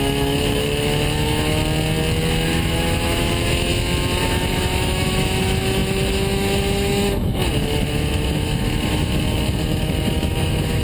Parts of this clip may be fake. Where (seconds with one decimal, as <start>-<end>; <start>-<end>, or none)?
0.0-1.6; 2.3-3.7; 4.2-10.8